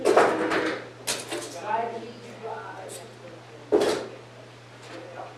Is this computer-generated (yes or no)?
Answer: no